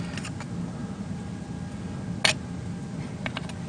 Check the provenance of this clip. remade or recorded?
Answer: recorded